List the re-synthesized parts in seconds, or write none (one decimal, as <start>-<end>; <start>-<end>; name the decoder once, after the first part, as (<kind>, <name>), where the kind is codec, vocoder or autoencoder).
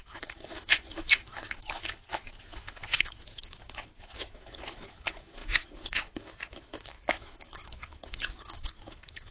0.0-9.3 (autoencoder, DAC-VAE)